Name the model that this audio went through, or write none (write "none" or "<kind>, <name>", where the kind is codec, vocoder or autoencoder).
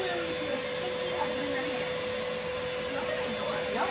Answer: none